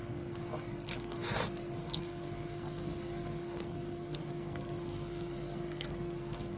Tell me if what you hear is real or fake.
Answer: fake